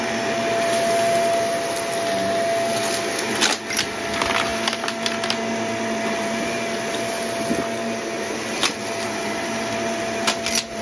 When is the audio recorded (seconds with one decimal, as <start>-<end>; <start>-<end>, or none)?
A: 0.0-10.8